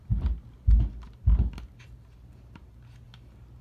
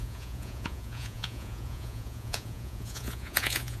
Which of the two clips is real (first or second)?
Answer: first